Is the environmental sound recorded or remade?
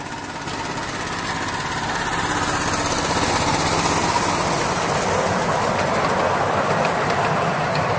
recorded